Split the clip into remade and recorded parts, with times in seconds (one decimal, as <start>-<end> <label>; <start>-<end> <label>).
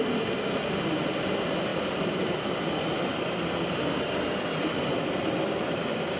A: 0.0-6.2 recorded